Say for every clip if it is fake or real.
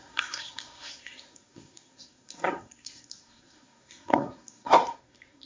fake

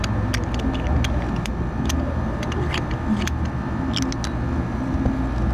real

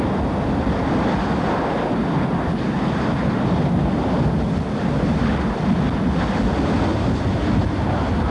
real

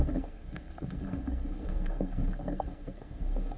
fake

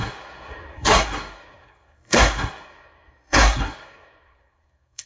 fake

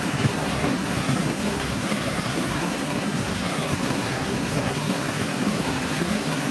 fake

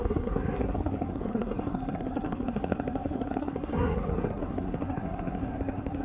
fake